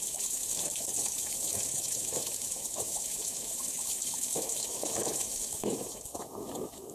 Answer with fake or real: fake